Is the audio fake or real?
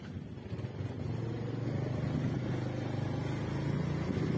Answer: real